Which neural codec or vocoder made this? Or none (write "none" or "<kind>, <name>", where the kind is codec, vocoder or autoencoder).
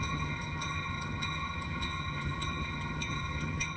vocoder, HiFi-GAN